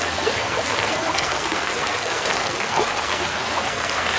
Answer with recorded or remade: remade